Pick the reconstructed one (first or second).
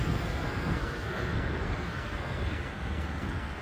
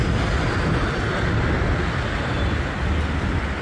first